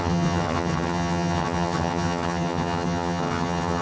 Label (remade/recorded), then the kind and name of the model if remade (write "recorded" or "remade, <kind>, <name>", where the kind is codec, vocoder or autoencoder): remade, vocoder, HiFi-GAN